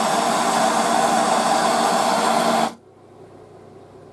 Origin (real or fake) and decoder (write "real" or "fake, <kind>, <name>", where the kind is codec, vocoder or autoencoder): real